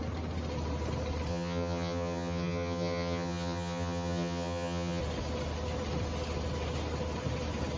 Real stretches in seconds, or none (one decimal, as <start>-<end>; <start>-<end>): 0.0-1.3; 5.0-7.8